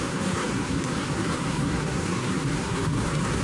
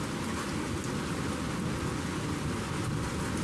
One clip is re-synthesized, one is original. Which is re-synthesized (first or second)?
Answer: first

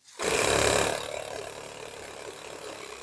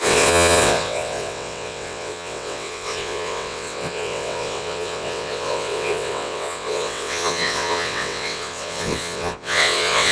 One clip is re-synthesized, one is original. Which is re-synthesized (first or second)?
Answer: second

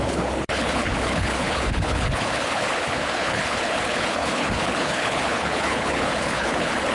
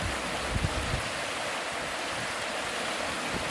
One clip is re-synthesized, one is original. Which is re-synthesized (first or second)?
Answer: first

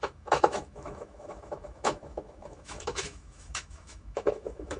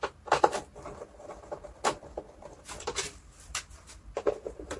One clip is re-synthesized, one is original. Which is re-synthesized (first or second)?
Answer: first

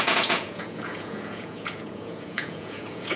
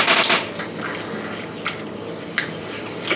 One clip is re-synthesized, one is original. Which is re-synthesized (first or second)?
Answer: first